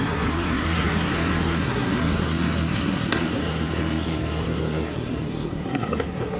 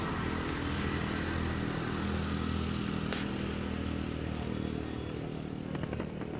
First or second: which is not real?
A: first